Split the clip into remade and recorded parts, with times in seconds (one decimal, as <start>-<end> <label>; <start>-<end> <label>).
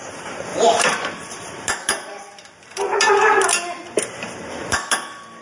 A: 0.0-5.4 recorded